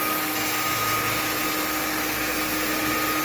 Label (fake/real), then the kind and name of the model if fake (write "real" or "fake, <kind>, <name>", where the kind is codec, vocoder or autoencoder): real